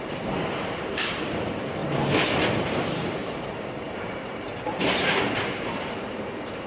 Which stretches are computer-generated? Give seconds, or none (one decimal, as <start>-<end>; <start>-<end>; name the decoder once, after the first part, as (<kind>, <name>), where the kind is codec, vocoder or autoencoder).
0.0-1.8 (vocoder, BigVGAN v2); 2.6-3.2; 4.0-6.7

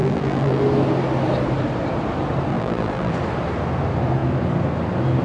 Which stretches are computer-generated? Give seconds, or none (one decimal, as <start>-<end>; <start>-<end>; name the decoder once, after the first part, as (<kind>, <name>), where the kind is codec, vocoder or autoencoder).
0.0-0.6 (vocoder, BigVGAN v2); 2.5-3.1

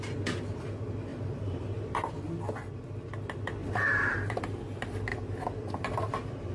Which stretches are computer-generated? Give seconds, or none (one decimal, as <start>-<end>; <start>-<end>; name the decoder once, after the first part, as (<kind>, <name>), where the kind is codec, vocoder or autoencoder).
1.1-2.1 (vocoder, BigVGAN v2); 3.6-4.4; 5.1-6.5